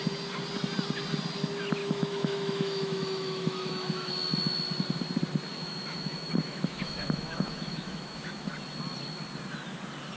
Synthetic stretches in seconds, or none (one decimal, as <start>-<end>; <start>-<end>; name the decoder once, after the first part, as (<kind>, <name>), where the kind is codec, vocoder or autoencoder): 1.8-4.1 (autoencoder, DAC-VAE); 5.5-8.5